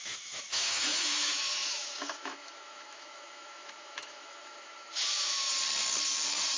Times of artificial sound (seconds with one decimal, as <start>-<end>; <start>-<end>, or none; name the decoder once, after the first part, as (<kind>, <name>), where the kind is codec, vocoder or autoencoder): 0.0-5.5 (autoencoder, DAC-VAE)